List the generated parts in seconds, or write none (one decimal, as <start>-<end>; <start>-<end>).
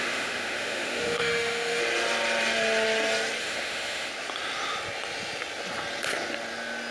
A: 0.0-1.8; 3.4-4.1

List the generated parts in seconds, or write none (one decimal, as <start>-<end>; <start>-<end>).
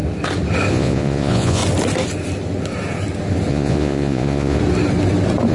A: 0.7-1.6; 3.5-4.6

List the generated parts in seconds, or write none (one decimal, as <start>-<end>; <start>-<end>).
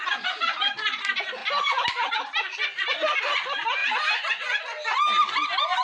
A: none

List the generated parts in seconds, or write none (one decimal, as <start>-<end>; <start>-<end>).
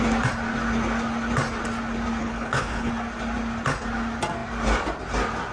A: 2.2-2.9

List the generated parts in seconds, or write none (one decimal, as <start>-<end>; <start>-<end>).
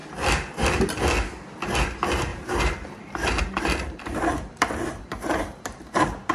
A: 2.3-6.3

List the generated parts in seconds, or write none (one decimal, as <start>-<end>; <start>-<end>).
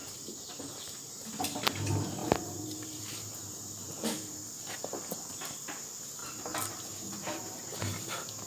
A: 0.0-1.1; 2.2-3.0; 3.8-4.4; 6.2-8.0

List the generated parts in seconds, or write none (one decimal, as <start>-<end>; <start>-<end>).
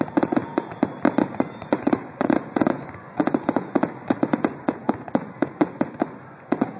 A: 0.0-0.4; 1.6-6.8